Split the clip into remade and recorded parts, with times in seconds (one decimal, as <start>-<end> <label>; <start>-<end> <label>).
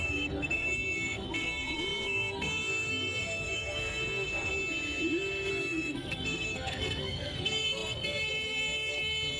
0.0-4.5 remade; 4.5-5.5 recorded; 5.5-9.4 remade